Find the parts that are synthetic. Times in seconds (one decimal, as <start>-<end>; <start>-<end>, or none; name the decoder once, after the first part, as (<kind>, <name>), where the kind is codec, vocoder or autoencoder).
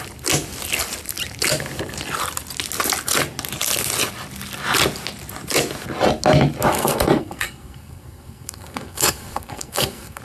6.7-10.2 (codec, SNAC)